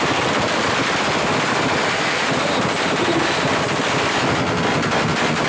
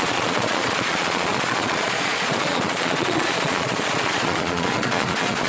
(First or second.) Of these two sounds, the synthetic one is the second